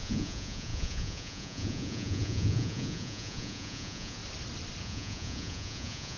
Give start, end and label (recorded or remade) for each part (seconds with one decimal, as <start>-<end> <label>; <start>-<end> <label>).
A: 0.0-4.2 remade; 4.2-4.8 recorded; 4.8-6.2 remade